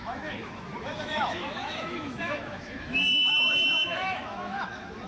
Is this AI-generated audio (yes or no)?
yes